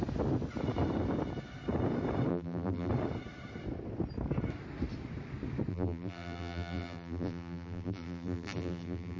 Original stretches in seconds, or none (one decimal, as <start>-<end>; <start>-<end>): 0.0-2.3; 2.9-5.7